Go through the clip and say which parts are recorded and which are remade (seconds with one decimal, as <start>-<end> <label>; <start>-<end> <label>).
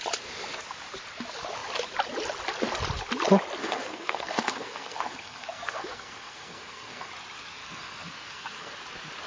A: 0.0-3.6 recorded; 3.6-7.1 remade; 7.1-7.6 recorded; 7.6-8.7 remade; 8.7-9.3 recorded